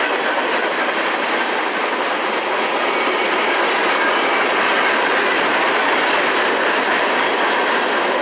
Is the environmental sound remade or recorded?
recorded